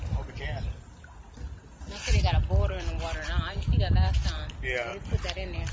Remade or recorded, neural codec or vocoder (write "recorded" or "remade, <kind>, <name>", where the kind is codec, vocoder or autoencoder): recorded